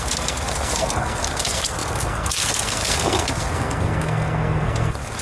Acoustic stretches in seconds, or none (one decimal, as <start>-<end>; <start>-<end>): none